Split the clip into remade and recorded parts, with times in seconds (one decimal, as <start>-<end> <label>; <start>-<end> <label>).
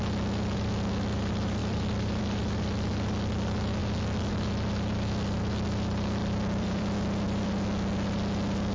0.0-1.6 recorded; 1.6-2.2 remade; 2.2-3.8 recorded; 3.8-4.3 remade; 4.3-6.2 recorded; 6.2-6.8 remade; 6.8-8.7 recorded